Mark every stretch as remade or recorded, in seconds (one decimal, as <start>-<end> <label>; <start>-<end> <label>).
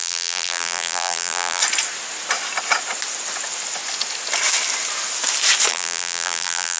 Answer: 0.0-1.6 remade; 1.6-5.7 recorded; 5.7-6.8 remade